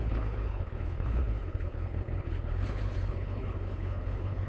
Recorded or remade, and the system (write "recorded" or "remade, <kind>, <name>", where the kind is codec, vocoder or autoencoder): remade, codec, HILCodec